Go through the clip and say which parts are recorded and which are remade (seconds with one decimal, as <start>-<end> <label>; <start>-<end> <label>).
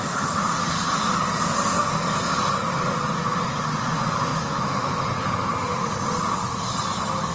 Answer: 0.0-4.3 recorded; 4.3-5.0 remade; 5.0-7.3 recorded